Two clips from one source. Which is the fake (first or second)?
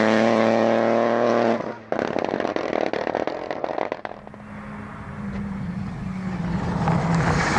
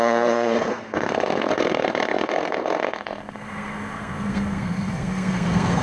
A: second